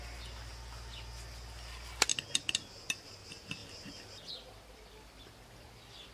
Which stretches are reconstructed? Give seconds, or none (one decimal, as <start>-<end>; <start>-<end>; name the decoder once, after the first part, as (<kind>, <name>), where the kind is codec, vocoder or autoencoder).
none